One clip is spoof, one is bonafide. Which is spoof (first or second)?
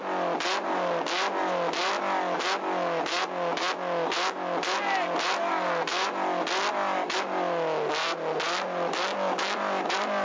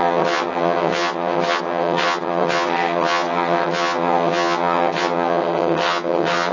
second